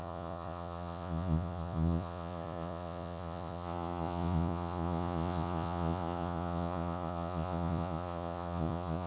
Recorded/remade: remade